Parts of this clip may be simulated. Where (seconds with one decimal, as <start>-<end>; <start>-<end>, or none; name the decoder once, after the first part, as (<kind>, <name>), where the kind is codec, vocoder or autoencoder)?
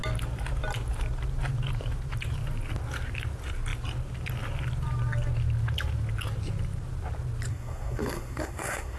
7.5-9.0 (codec, SNAC)